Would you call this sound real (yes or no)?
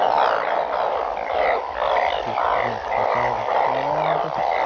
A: yes